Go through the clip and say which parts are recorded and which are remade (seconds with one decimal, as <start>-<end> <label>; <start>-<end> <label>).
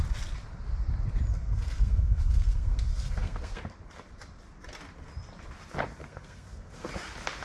0.0-1.3 recorded; 1.3-3.6 remade; 3.6-6.0 recorded; 6.0-6.9 remade; 6.9-7.4 recorded